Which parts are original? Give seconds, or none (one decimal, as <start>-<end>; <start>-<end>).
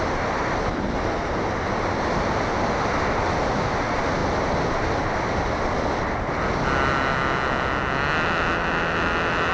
0.0-9.5